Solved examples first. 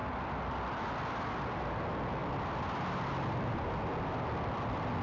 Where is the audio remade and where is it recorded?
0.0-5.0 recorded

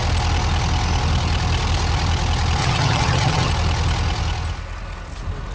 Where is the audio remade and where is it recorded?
0.0-2.6 recorded; 2.6-3.5 remade; 3.5-5.5 recorded